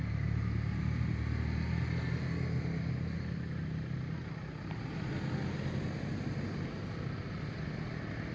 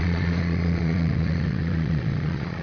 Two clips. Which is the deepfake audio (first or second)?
second